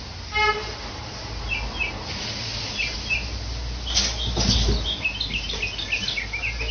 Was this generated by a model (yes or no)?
no